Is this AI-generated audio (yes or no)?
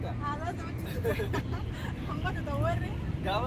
no